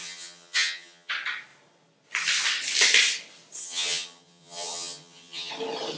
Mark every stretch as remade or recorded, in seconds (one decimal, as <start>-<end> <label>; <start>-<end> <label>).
0.0-1.1 remade; 1.1-3.6 recorded; 3.6-5.5 remade; 5.5-6.0 recorded